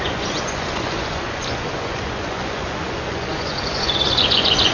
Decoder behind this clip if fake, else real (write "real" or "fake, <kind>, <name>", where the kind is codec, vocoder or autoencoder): fake, vocoder, Vocos